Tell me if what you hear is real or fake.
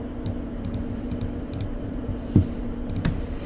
fake